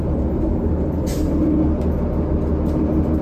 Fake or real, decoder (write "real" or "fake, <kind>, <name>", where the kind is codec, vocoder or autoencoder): real